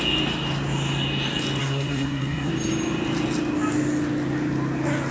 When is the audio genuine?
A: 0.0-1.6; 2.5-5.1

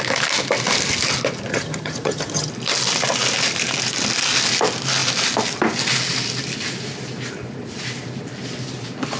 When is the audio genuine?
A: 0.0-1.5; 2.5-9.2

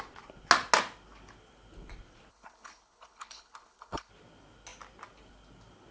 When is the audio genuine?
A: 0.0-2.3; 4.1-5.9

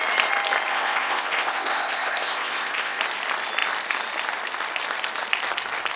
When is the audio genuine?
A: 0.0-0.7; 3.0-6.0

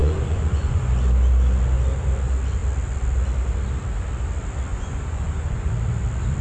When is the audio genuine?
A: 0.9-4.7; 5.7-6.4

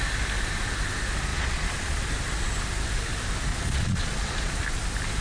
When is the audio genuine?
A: 0.0-1.3; 2.0-3.5; 4.6-5.2